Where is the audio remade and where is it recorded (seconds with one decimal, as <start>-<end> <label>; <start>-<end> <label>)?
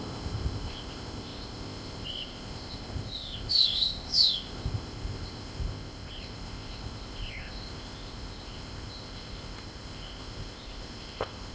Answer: 0.0-11.5 remade